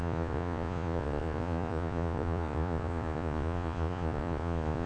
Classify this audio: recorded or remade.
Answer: remade